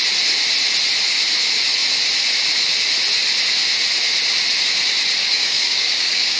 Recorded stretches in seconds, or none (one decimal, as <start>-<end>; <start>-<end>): 0.0-5.2